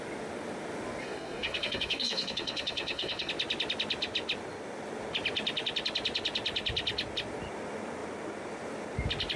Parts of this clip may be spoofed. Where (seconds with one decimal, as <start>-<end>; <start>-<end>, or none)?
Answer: 1.0-3.3